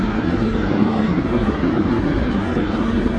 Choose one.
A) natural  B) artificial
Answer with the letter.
B